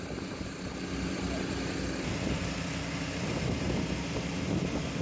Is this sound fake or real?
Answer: real